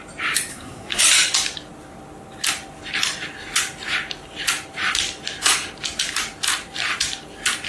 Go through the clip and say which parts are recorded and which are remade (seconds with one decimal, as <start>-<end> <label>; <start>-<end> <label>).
0.0-0.5 recorded; 0.5-1.0 remade; 1.0-7.7 recorded